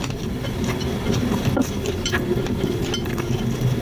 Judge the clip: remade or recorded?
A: recorded